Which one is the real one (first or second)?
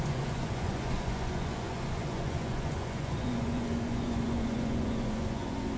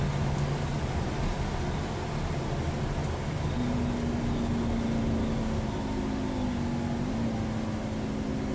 second